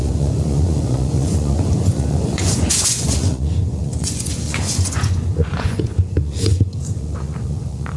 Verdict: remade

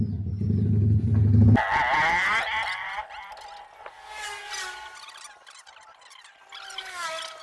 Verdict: recorded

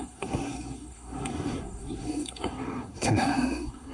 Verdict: remade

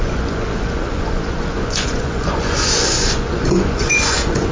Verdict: remade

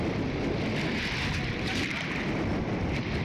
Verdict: recorded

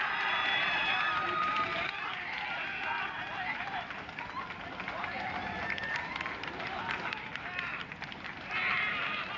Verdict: remade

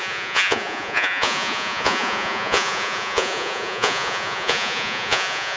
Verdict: remade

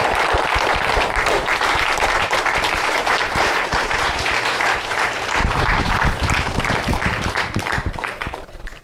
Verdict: remade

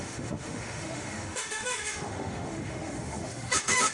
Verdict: remade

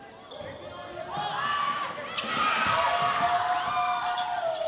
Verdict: recorded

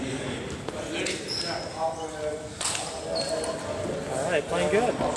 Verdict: recorded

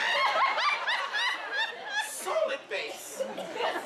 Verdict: recorded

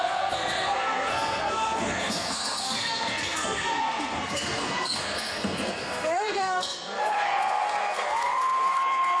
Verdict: remade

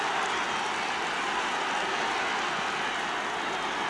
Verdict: recorded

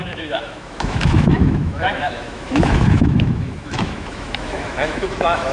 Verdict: remade